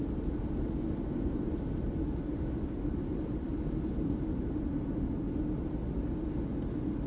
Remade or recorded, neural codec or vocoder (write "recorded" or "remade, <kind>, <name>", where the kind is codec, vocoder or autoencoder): recorded